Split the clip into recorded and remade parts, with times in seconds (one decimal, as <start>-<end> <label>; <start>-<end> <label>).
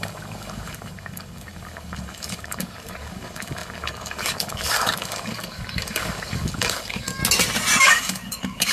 0.0-7.2 remade; 7.2-7.8 recorded; 7.8-8.7 remade